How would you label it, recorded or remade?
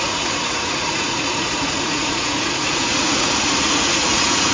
remade